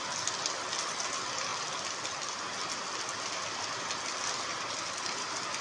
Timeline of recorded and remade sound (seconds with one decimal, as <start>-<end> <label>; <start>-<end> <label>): 0.0-1.5 recorded; 1.5-4.7 remade; 4.7-5.6 recorded